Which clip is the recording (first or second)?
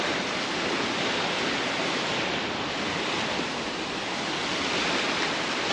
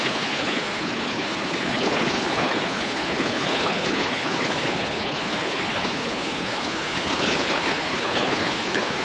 first